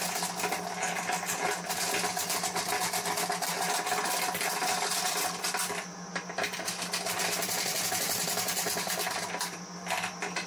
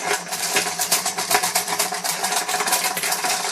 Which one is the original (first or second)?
first